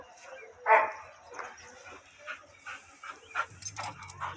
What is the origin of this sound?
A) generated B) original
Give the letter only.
B